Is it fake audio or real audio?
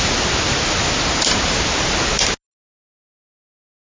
real